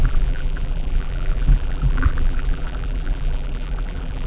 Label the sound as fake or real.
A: fake